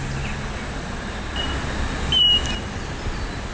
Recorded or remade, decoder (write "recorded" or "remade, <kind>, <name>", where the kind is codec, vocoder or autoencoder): recorded